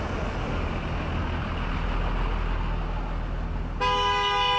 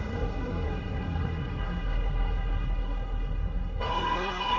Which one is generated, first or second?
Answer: second